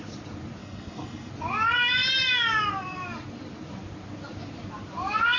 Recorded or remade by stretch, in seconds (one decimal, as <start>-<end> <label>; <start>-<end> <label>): 0.0-0.6 recorded; 0.6-1.3 remade; 1.3-5.4 recorded